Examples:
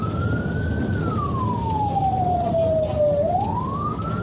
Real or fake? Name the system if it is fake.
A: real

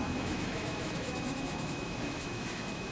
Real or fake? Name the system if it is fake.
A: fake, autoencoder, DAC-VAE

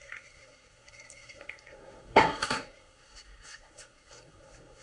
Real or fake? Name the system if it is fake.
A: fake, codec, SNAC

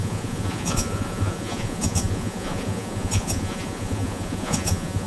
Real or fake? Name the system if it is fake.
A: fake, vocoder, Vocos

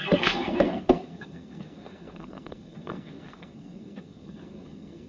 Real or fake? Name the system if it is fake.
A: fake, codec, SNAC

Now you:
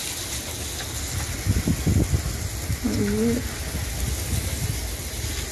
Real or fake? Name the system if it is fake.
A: real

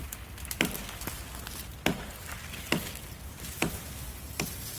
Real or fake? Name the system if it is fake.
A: real